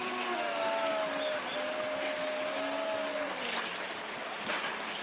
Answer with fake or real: real